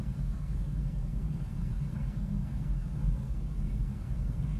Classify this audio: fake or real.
fake